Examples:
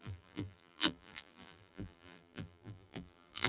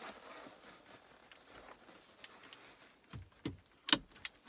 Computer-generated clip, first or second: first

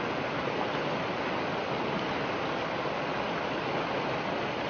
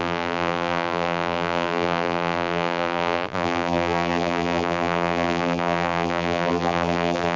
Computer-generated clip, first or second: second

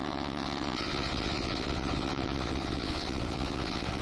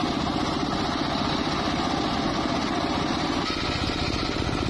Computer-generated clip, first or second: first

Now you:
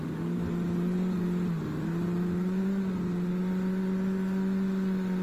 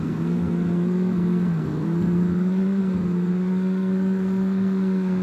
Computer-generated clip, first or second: second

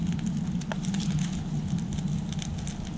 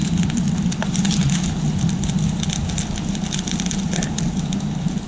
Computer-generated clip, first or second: second